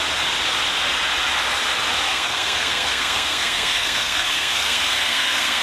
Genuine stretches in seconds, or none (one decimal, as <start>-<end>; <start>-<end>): 0.0-2.1